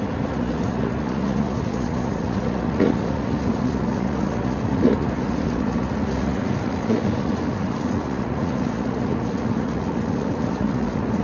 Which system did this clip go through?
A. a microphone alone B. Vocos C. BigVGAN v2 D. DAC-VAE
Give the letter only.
B